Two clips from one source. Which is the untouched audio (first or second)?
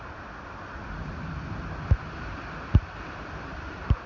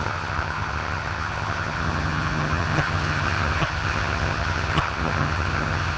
first